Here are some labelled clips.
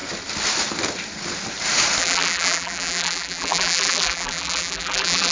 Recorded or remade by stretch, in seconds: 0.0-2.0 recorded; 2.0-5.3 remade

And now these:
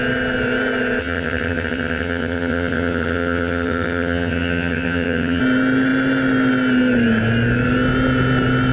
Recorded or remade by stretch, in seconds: 0.0-1.0 recorded; 1.0-5.4 remade; 5.4-8.7 recorded

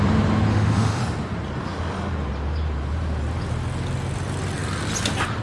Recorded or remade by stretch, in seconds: 0.0-0.5 recorded; 0.5-1.0 remade; 1.0-5.4 recorded

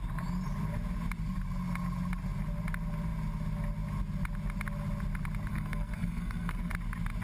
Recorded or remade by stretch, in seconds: 0.0-5.5 recorded; 5.5-6.7 remade; 6.7-7.2 recorded